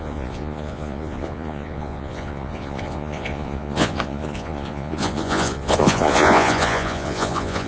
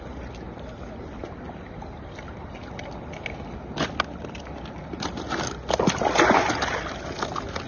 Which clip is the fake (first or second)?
first